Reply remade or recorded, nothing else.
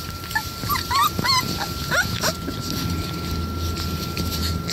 recorded